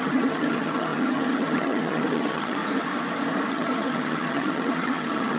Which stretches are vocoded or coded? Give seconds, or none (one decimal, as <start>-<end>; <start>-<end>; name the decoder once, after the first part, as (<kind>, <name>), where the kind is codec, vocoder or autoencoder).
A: 0.0-2.6 (vocoder, HiFi-GAN); 3.5-5.4